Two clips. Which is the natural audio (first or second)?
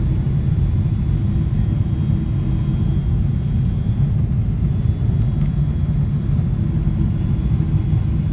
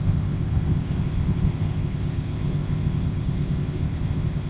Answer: first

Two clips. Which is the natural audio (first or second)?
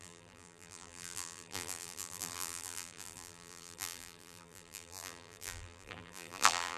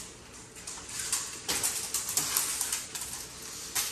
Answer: second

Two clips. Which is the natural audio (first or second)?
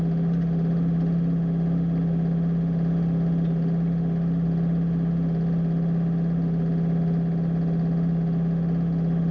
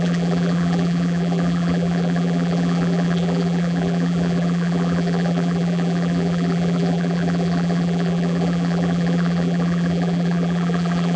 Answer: first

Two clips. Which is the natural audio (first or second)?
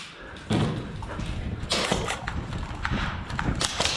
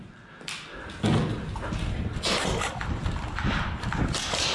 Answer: second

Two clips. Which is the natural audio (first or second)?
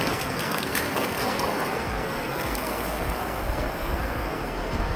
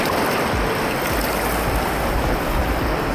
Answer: second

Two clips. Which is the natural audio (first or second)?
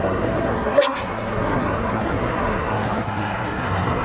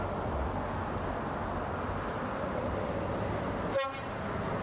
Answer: second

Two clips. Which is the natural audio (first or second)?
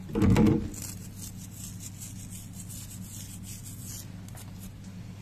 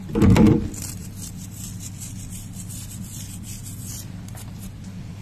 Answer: first